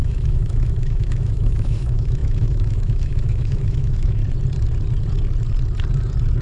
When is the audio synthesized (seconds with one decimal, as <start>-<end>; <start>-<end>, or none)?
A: 0.0-4.2